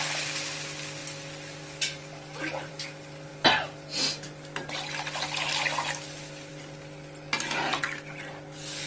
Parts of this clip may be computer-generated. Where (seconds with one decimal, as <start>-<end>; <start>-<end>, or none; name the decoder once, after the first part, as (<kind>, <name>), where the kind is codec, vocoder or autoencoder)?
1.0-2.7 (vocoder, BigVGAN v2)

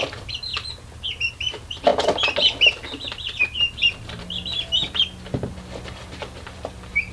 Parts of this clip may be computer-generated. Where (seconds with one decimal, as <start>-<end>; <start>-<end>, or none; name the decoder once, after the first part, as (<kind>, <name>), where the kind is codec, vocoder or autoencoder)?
none

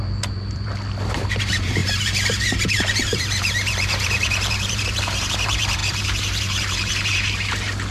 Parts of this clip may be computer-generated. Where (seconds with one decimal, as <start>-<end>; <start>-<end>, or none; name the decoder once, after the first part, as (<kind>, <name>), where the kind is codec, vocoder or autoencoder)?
0.0-0.7 (vocoder, BigVGAN v2); 1.4-7.9

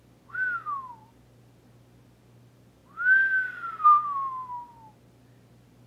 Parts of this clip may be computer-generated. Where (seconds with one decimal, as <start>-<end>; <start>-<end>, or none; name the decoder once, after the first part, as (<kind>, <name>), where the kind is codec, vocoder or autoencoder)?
none